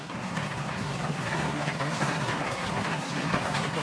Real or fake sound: fake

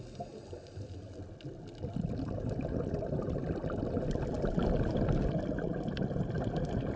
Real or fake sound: real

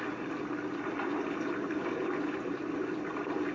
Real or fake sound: real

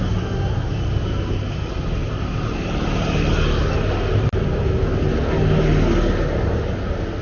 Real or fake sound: real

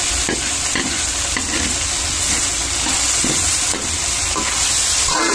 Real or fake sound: real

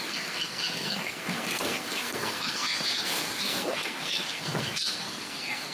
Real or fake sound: fake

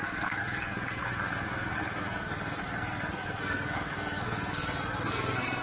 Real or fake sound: fake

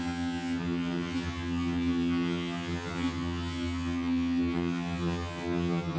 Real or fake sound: fake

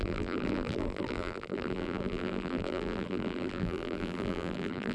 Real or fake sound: fake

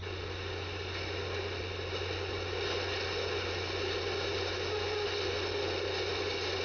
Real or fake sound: real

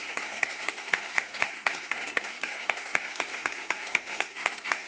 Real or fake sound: fake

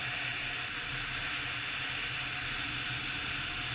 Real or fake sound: real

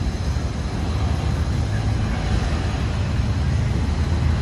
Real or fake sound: real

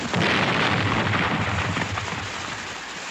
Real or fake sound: fake